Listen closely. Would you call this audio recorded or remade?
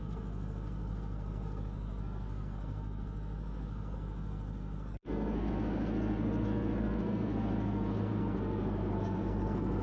remade